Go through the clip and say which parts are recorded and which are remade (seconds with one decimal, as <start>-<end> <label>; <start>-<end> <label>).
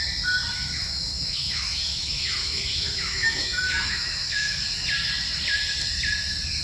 0.0-0.6 recorded; 0.6-4.6 remade; 4.6-6.6 recorded